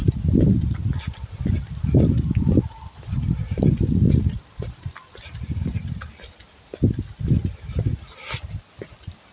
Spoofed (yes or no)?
no